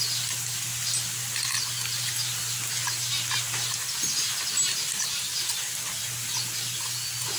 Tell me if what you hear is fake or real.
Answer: real